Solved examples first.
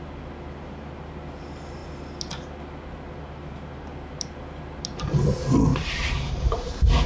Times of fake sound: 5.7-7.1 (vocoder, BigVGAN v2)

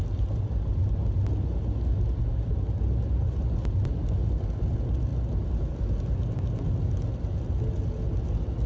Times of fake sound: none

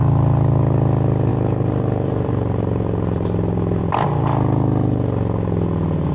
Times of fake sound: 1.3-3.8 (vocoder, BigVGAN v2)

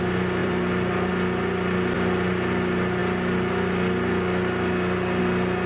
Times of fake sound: 0.4-1.1 (vocoder, BigVGAN v2)

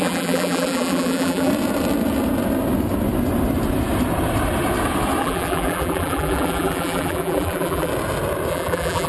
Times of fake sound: 0.0-1.5 (vocoder, BigVGAN v2); 5.2-7.9; 8.5-9.1